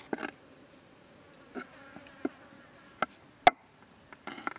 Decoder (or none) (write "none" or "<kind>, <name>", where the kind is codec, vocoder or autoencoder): none